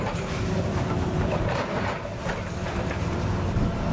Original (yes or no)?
no